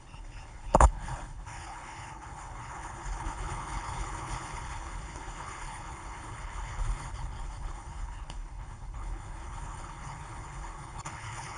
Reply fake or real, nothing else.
fake